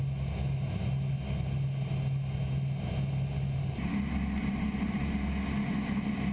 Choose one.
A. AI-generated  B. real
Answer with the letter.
B